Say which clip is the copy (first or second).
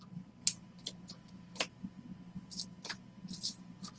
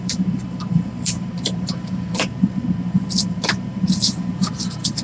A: second